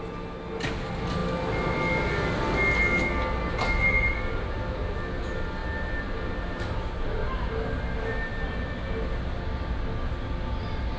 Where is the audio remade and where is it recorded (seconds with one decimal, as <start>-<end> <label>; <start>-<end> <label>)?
0.0-11.0 recorded